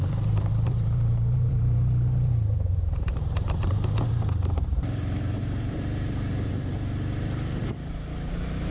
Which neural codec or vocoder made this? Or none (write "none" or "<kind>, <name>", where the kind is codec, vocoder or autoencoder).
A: vocoder, BigVGAN v2